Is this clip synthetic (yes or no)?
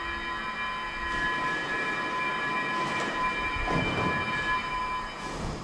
no